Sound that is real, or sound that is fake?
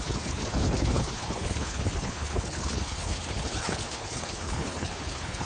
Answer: fake